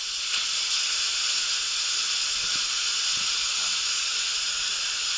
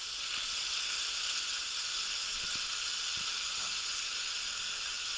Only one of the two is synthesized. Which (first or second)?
first